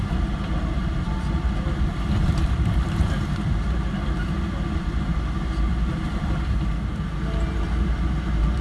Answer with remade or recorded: remade